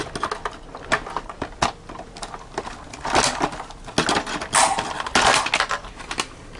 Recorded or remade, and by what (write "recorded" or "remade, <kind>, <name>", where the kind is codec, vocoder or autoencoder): recorded